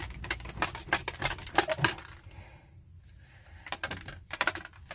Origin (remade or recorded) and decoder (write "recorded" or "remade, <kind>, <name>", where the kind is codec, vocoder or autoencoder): recorded